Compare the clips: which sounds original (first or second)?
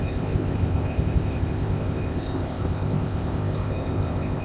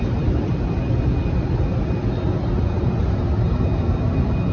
second